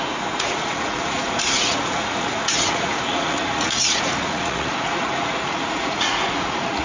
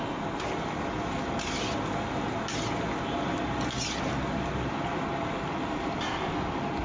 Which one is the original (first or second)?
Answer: second